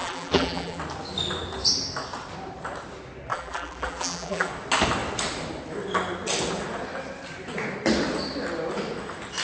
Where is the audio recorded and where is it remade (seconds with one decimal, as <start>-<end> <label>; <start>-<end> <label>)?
0.0-0.8 remade; 0.8-3.3 recorded; 3.3-4.5 remade; 4.5-9.4 recorded